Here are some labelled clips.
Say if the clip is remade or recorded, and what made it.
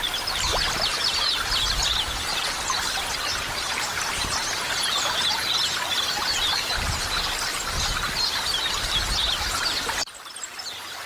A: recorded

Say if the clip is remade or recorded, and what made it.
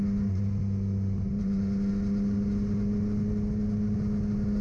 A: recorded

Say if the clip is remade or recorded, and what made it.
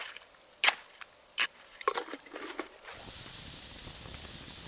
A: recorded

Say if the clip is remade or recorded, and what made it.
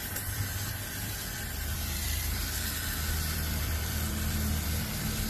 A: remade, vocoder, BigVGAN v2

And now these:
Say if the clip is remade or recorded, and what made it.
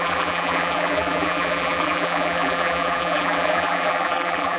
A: remade, vocoder, BigVGAN v2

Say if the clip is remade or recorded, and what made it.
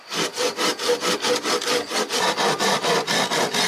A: recorded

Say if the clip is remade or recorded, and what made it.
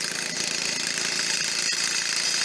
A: recorded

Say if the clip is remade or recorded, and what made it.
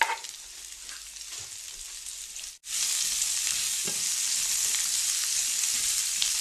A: recorded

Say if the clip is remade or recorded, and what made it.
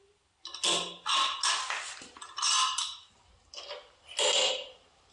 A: recorded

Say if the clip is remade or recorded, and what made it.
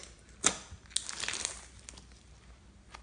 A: recorded